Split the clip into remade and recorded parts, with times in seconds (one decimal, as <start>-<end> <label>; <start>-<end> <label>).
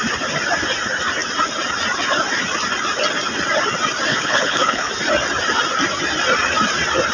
0.0-4.1 recorded; 4.1-4.9 remade; 4.9-7.1 recorded